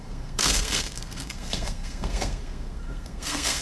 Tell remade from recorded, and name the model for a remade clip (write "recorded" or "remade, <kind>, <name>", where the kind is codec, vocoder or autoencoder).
remade, codec, SNAC